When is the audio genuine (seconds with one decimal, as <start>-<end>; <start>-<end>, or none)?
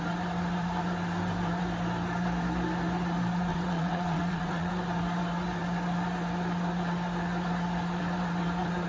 0.0-3.5; 4.7-8.9